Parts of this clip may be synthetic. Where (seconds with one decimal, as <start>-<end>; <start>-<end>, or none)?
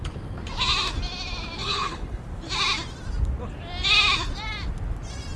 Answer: 1.6-2.2